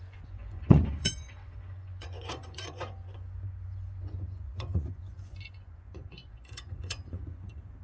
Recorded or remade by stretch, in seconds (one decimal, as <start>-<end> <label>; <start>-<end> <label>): 0.0-7.8 remade